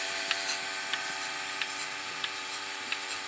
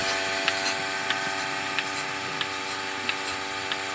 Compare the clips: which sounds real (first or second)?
second